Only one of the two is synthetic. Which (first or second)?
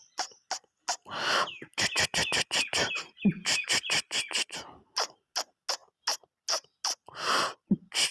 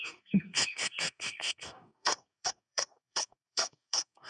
second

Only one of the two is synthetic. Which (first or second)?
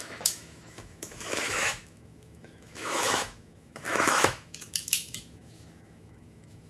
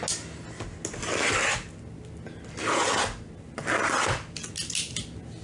first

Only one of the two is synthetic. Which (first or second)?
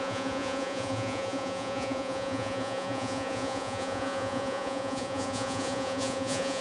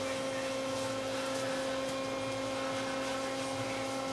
first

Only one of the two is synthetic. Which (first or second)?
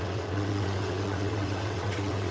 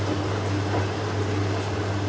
first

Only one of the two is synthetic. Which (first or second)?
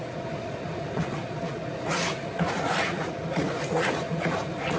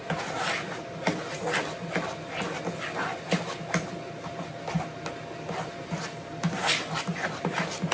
first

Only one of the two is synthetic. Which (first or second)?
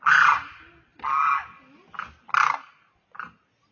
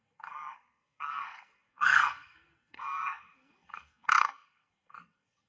second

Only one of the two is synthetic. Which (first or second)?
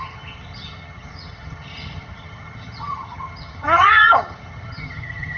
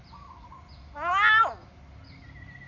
first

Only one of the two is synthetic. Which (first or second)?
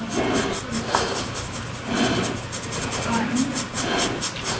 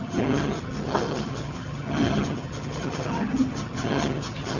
second